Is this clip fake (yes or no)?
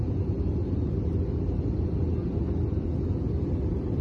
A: no